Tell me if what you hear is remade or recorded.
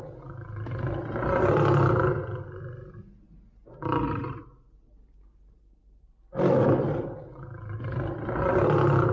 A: recorded